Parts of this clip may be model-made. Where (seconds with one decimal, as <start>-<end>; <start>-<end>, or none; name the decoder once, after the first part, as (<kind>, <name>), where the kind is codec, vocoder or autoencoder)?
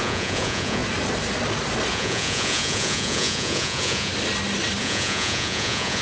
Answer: 0.0-0.8 (vocoder, Vocos); 1.9-4.1; 4.8-6.0